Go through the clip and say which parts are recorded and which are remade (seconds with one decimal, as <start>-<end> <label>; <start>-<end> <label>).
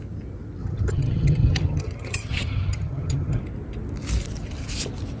0.0-0.6 recorded; 0.6-3.4 remade; 3.4-5.2 recorded